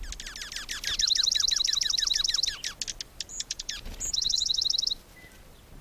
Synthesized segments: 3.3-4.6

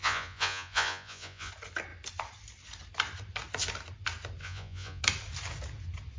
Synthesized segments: 0.0-1.5; 4.4-5.0

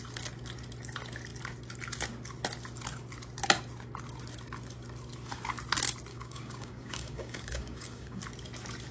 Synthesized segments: 6.1-8.2

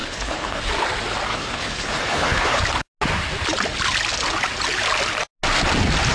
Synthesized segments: 0.0-0.6; 1.3-2.6

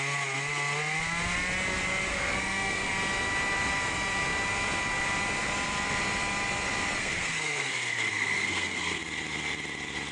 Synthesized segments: 2.1-2.9; 7.0-9.0

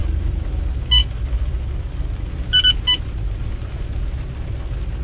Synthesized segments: 0.0-0.6; 1.0-2.3

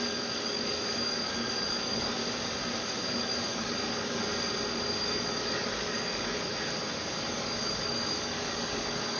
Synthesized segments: 0.0-2.2; 2.8-4.2; 4.9-6.5; 7.3-9.2

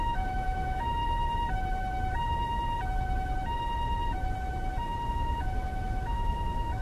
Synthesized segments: 0.0-1.0; 5.1-6.8